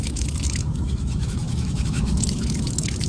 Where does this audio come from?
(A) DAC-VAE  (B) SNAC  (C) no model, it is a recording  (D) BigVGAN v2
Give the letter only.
A